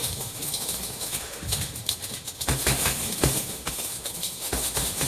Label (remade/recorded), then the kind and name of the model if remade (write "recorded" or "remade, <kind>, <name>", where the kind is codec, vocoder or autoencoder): remade, autoencoder, DAC-VAE